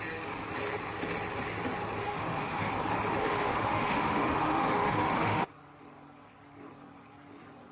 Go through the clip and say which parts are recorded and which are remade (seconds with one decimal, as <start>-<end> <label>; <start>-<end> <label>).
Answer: 0.0-2.0 recorded; 2.0-2.7 remade; 2.7-3.2 recorded; 3.2-5.5 remade; 5.5-7.7 recorded